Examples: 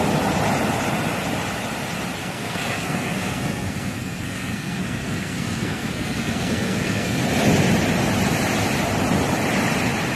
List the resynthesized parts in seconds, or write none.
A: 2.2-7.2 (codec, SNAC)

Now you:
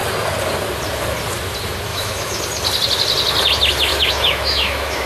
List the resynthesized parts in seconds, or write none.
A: 1.9-2.4 (autoencoder, DAC-VAE); 3.9-5.1

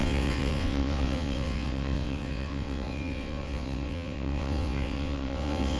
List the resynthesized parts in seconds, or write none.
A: 0.0-5.8 (vocoder, WaveNeXt)

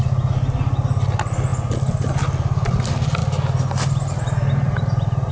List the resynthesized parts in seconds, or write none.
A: none